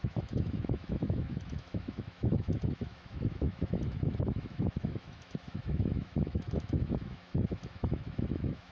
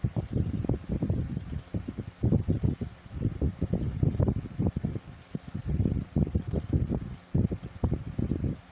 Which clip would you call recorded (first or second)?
second